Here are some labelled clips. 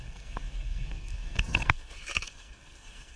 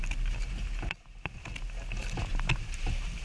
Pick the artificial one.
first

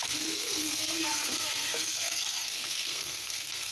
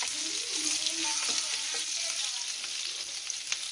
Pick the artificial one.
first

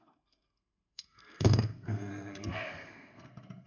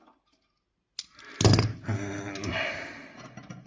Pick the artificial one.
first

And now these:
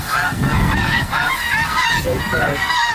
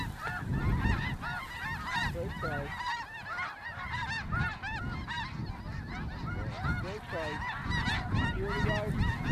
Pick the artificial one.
first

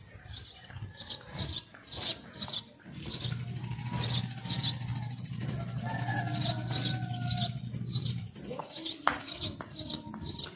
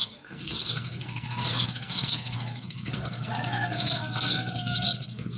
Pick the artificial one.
second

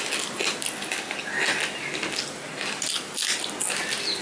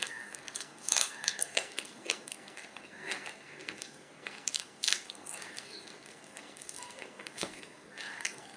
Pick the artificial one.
second